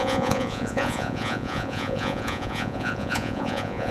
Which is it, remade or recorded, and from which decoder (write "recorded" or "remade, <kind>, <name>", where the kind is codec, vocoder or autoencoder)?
remade, vocoder, Vocos